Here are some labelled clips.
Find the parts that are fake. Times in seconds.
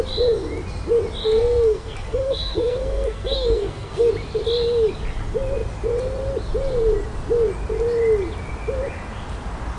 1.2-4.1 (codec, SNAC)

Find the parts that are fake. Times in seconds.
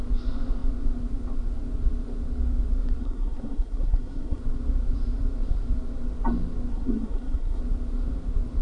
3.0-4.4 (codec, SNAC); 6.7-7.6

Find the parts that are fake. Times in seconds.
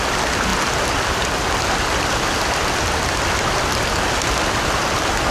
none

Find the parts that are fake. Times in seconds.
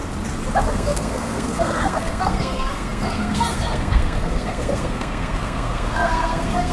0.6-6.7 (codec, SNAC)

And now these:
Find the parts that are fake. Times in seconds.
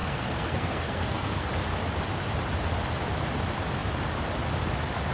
0.0-1.5 (codec, SNAC)